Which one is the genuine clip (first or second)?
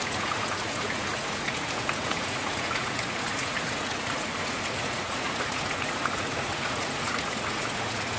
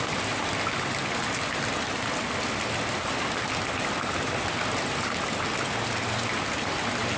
second